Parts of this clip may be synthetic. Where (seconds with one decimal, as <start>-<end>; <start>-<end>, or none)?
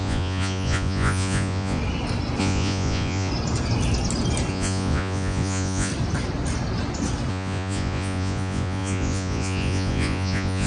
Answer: 0.0-1.8; 2.4-3.3; 4.5-5.9; 7.3-10.7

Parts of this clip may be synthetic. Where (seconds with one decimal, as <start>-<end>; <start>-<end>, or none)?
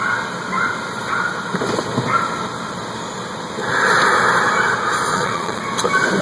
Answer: 5.1-5.6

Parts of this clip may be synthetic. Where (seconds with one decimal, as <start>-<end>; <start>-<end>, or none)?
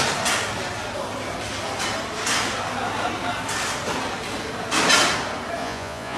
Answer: 5.6-6.2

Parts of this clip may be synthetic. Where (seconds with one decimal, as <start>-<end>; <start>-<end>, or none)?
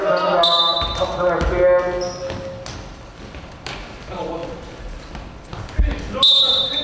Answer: none